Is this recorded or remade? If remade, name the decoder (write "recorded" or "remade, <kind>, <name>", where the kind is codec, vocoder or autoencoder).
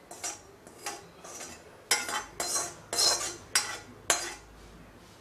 recorded